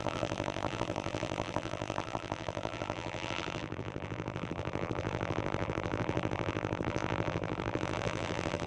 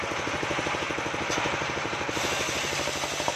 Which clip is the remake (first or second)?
first